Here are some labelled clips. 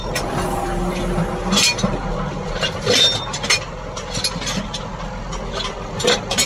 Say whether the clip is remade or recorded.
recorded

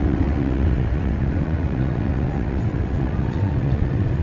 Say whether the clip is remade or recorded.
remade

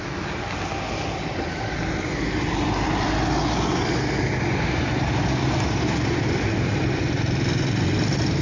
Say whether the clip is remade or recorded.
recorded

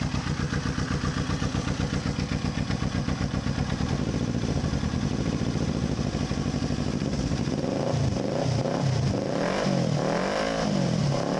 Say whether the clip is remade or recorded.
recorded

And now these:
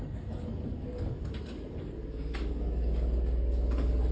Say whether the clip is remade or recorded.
remade